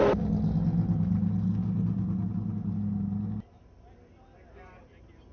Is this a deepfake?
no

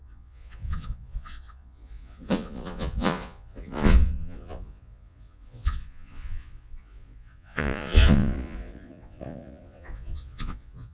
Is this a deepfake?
yes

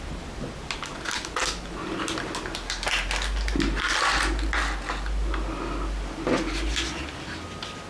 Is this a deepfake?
no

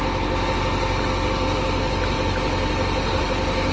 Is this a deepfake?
no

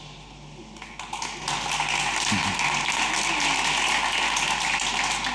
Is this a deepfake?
no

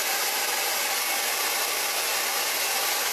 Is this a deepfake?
no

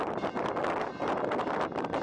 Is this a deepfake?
no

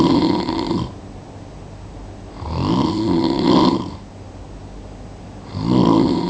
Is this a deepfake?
no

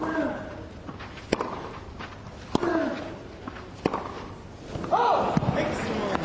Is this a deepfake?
no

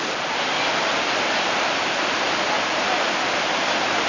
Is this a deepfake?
no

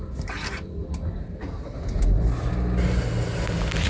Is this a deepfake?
no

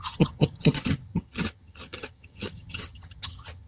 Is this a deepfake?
yes